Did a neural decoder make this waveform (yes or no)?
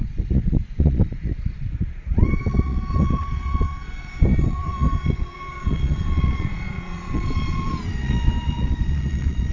yes